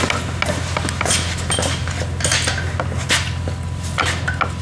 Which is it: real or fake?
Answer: real